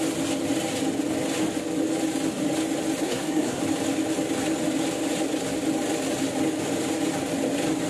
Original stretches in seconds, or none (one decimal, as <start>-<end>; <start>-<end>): 0.0-3.0; 3.6-7.9